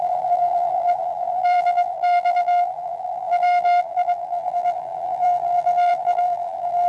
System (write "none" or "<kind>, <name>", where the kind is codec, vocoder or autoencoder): vocoder, BigVGAN v2